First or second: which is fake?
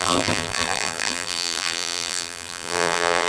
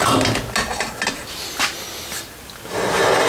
first